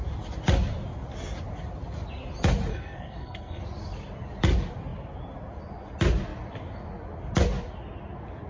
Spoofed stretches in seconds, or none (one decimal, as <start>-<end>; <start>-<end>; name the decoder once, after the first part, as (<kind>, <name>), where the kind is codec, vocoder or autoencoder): 2.7-3.6 (codec, SNAC)